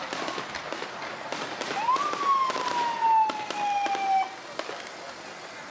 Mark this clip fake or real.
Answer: real